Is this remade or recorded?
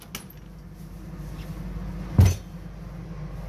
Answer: recorded